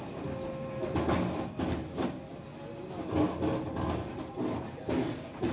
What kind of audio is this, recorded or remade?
recorded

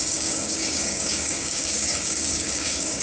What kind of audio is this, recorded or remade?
remade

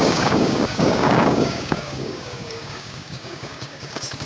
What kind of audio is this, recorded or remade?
remade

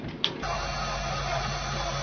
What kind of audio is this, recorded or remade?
recorded